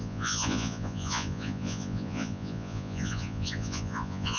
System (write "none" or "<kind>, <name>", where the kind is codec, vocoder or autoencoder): vocoder, Vocos